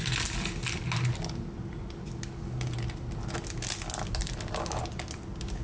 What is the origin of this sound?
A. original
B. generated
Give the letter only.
A